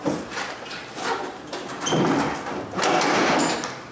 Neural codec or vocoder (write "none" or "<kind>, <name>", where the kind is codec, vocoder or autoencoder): none